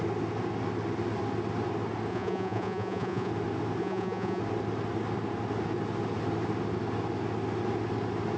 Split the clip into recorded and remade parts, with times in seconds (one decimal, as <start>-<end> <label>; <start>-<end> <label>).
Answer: 0.0-2.1 recorded; 2.1-3.3 remade; 3.3-3.8 recorded; 3.8-4.4 remade; 4.4-8.4 recorded